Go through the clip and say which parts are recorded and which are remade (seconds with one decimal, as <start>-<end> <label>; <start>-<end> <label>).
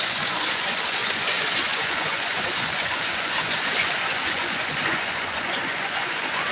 0.0-6.5 remade